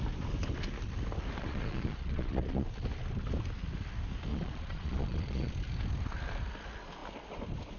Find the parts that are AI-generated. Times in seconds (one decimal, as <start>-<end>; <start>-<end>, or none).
1.4-2.7; 4.3-5.5